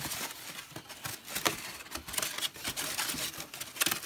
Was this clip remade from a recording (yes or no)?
no